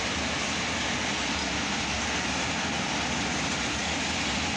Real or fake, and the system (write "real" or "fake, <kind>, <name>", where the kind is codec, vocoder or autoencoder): real